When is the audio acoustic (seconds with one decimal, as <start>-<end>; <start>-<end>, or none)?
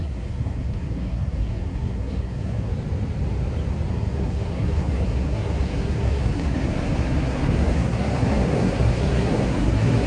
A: 2.7-3.9